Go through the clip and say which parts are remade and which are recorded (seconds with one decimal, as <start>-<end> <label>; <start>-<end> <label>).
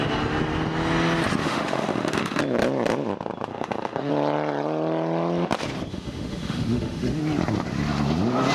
0.0-1.4 recorded; 1.4-2.4 remade; 2.4-3.5 recorded; 3.5-4.1 remade; 4.1-5.9 recorded; 5.9-7.2 remade; 7.2-8.5 recorded